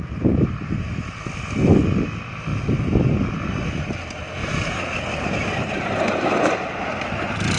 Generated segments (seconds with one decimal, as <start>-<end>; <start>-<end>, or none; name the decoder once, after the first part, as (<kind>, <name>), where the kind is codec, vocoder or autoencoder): 0.0-0.7 (vocoder, BigVGAN v2); 4.4-5.7